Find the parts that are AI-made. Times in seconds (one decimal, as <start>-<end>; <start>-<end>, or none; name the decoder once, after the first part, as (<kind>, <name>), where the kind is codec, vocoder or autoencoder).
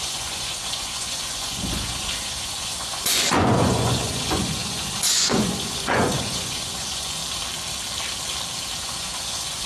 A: 0.0-7.2 (vocoder, Vocos); 8.8-9.7